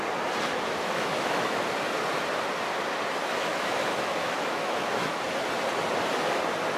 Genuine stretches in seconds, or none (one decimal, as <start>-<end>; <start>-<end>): 0.0-0.5; 1.6-3.2; 5.2-6.8